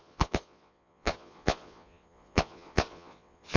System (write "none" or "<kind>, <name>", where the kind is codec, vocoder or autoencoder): vocoder, Vocos